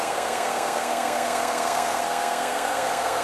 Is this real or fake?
fake